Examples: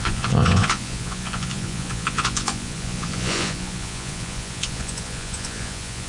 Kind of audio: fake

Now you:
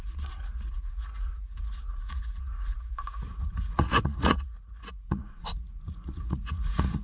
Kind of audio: fake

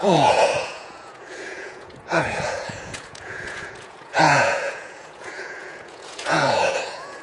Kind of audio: fake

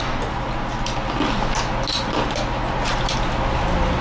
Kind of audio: real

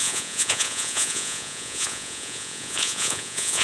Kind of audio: fake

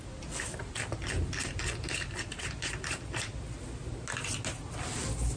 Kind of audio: real